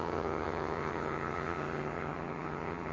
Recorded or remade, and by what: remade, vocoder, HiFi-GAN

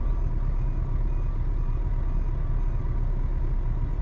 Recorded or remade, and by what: recorded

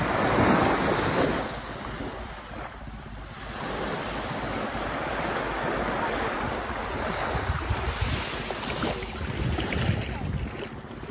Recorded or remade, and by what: recorded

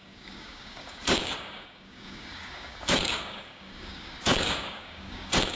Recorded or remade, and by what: remade, codec, DAC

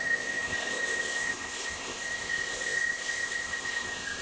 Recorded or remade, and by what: remade, codec, ZipCodec